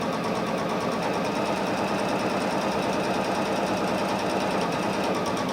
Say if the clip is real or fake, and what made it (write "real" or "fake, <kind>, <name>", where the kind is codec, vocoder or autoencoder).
real